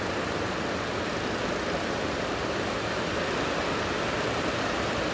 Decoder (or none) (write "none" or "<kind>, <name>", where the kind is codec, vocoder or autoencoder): none